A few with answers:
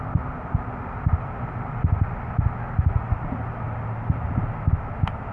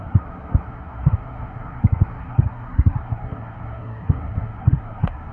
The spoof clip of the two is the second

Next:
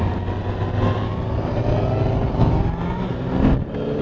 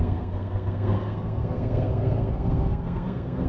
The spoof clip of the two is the second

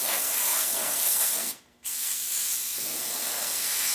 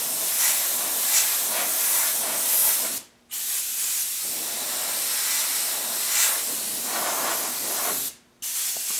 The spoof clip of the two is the first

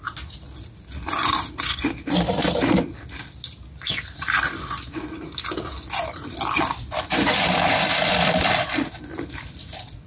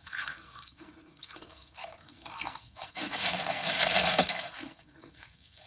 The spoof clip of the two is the second